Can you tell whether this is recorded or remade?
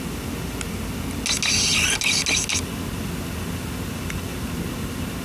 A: recorded